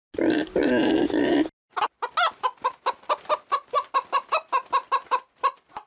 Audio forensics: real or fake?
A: real